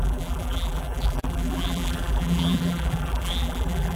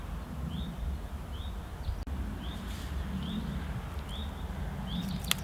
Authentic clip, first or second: second